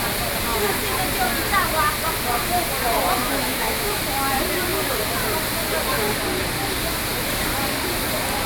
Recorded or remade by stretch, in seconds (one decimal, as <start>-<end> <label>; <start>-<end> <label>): 0.0-3.2 recorded; 3.2-4.0 remade; 4.0-8.5 recorded

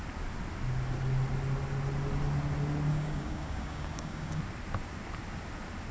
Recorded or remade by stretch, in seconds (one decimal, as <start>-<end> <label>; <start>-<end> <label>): 0.0-2.9 recorded; 2.9-4.4 remade; 4.4-5.9 recorded

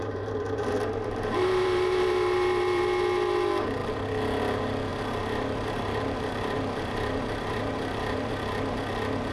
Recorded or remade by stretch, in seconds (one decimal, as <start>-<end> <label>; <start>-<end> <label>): 0.0-2.8 remade; 2.8-4.9 recorded; 4.9-8.3 remade; 8.3-9.3 recorded

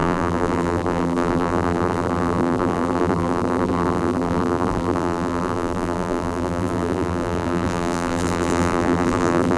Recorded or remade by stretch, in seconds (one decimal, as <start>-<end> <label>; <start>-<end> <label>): 0.0-9.6 remade

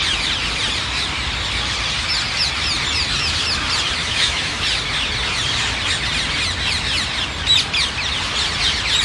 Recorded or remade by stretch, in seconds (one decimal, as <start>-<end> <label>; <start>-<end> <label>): 0.0-4.0 recorded; 4.0-4.6 remade; 4.6-9.0 recorded

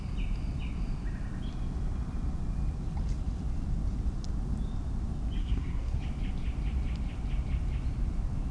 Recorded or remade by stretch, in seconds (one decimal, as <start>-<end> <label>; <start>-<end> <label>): 0.0-5.4 recorded; 5.4-6.0 remade; 6.0-8.5 recorded

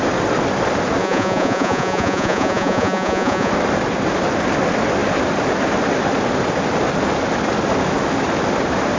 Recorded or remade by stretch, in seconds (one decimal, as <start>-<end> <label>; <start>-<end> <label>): 0.0-1.0 recorded; 1.0-3.5 remade; 3.5-9.0 recorded